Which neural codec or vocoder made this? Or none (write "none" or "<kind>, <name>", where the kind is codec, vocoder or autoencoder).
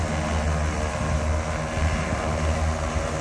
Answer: none